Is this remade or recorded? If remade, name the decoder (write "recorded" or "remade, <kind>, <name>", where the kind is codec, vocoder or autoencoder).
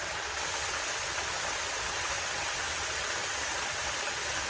recorded